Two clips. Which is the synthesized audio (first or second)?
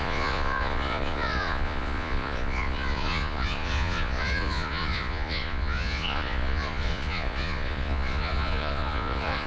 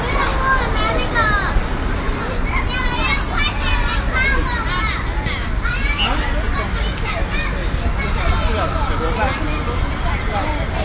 first